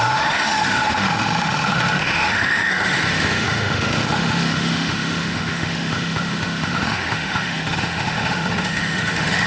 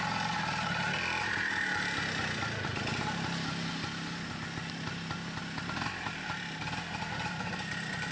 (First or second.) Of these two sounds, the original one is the second